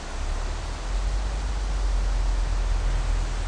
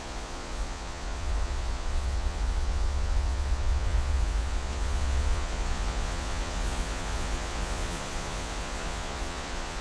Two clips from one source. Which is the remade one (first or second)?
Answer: second